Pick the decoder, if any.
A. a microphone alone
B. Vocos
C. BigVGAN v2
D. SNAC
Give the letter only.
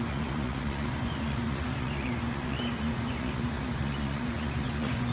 B